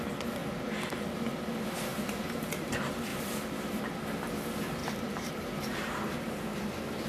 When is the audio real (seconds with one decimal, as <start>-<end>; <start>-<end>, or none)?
0.0-1.9; 2.7-3.1; 3.8-4.8; 6.4-7.1